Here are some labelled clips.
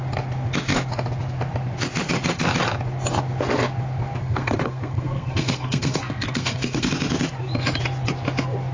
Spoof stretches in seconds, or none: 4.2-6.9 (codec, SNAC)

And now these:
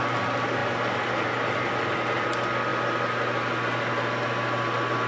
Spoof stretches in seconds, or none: none

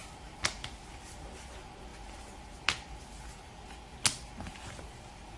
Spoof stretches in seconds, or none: none

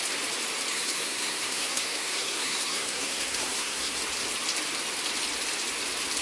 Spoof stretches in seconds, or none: 0.7-4.0 (codec, SNAC)

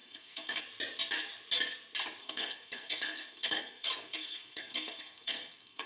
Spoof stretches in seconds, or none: 0.0-0.6 (codec, SNAC); 2.2-5.9

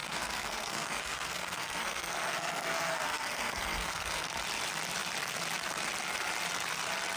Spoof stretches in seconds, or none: 0.0-4.3 (codec, SNAC)